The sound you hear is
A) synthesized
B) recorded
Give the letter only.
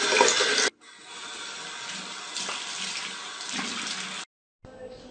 B